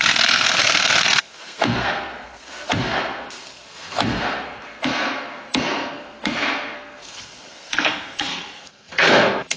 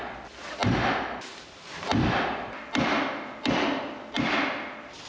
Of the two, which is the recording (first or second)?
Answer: second